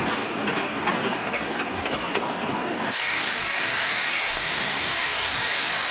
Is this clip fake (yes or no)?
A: yes